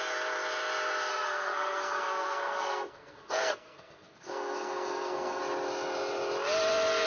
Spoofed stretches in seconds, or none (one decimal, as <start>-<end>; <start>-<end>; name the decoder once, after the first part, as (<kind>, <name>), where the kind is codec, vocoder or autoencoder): 1.1-5.4 (codec, SNAC)